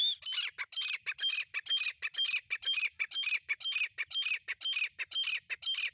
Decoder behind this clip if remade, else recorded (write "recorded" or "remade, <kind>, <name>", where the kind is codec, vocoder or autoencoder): recorded